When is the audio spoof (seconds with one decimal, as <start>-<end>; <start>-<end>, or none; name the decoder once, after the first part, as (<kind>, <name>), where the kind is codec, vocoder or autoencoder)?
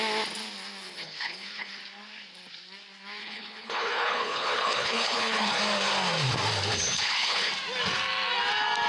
0.8-1.7 (codec, HILCodec); 3.2-5.6; 6.7-7.5